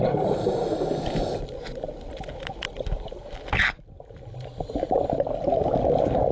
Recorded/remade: recorded